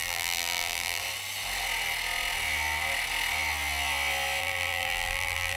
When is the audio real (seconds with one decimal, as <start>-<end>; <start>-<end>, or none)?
1.0-4.4